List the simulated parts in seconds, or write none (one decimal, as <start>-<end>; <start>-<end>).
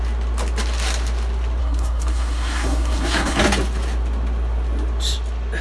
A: 1.6-3.4